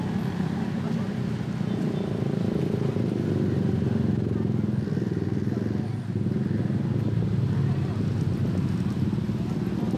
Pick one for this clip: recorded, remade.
recorded